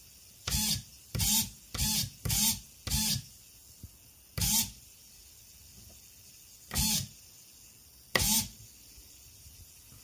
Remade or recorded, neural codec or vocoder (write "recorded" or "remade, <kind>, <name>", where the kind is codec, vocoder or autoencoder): recorded